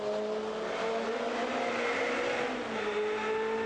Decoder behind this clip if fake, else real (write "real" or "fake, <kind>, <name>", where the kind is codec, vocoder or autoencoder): real